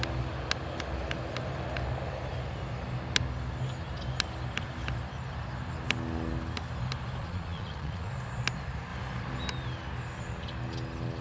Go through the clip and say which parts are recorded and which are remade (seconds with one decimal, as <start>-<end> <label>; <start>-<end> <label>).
0.0-7.2 recorded; 7.2-8.1 remade; 8.1-11.2 recorded